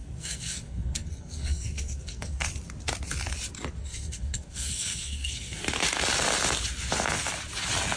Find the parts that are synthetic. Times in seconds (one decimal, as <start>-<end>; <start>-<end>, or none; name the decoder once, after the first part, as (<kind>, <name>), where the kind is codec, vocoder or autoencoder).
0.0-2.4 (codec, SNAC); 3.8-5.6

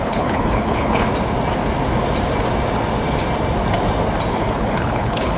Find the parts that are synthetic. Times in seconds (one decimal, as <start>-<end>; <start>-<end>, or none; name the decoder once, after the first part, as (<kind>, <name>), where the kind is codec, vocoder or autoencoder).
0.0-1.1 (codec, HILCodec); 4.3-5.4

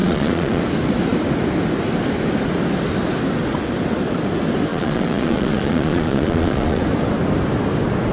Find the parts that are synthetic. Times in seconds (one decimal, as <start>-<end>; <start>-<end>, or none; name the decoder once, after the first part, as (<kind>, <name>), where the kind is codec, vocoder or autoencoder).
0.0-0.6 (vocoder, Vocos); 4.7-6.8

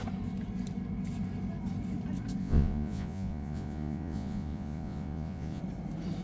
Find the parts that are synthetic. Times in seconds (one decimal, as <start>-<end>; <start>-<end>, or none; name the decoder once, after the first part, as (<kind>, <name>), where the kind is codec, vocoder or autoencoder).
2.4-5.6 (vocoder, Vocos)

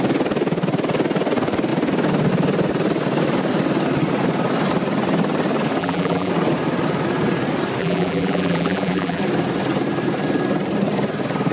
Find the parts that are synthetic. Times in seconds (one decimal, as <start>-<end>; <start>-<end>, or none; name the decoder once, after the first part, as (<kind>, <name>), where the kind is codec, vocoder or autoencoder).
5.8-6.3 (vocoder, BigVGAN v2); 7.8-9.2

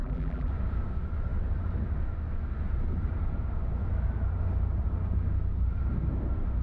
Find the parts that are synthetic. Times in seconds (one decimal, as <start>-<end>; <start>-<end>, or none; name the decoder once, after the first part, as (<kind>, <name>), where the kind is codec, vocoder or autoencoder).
0.0-0.5 (vocoder, BigVGAN v2)

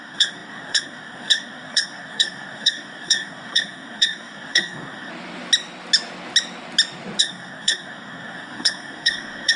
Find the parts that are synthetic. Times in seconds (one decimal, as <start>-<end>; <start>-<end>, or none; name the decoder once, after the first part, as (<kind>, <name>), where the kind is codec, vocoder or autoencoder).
0.0-5.1 (codec, SNAC); 7.2-9.6

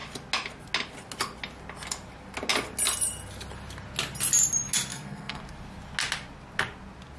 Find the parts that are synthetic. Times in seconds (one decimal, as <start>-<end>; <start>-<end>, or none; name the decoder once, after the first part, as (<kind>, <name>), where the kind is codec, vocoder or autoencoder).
4.9-5.4 (codec, SNAC)